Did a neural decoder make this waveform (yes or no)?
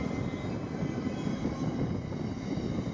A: no